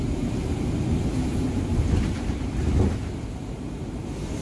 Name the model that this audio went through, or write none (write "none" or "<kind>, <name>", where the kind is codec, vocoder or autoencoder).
none